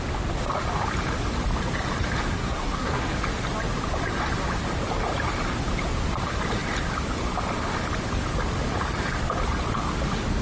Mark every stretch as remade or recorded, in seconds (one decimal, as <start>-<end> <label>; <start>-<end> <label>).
0.0-2.3 recorded; 2.3-3.1 remade; 3.1-10.4 recorded